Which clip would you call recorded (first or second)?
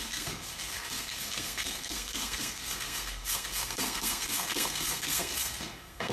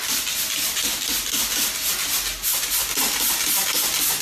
second